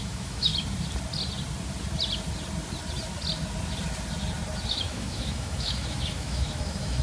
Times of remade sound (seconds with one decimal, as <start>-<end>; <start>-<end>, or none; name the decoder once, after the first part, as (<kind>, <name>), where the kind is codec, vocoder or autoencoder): 0.0-0.5 (autoencoder, DAC-VAE); 4.7-7.0